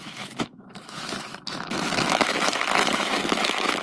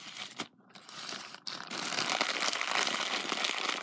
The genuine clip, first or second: second